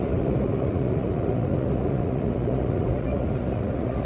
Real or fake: fake